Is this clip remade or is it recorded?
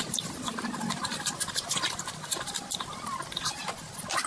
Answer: recorded